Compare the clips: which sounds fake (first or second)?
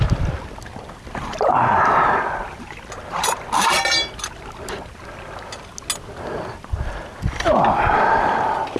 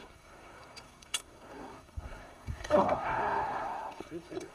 second